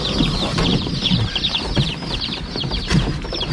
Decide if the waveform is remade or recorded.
remade